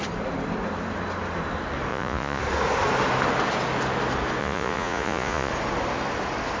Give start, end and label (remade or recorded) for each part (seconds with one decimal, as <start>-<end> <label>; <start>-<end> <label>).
0.0-1.9 recorded; 1.9-2.4 remade; 2.4-4.4 recorded; 4.4-5.5 remade; 5.5-6.6 recorded